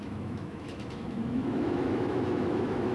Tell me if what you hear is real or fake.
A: fake